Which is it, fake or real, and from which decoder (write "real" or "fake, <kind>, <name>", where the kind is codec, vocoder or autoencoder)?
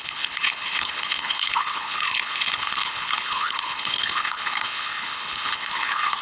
fake, codec, HILCodec